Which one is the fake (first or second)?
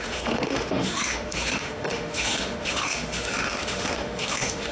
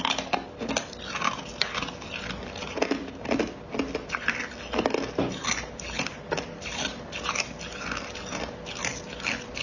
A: first